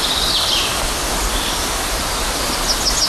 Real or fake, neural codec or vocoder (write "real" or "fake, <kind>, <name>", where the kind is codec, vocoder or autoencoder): real